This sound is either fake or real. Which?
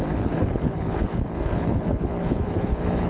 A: fake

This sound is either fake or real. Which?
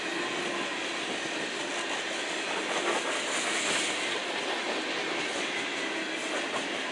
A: real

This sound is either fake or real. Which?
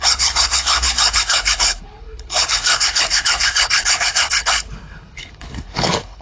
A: fake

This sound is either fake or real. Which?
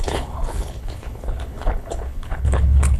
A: fake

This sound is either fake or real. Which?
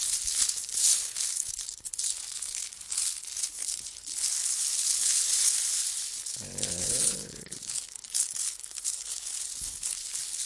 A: fake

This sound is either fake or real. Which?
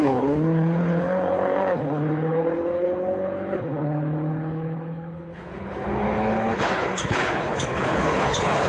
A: fake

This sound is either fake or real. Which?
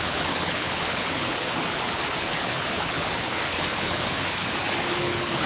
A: fake